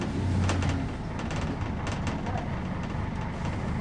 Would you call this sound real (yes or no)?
yes